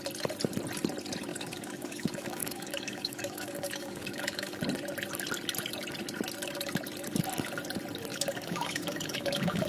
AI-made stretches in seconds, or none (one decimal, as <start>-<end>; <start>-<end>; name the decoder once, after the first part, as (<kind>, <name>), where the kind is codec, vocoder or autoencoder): 1.3-4.6 (codec, DAC); 8.1-9.7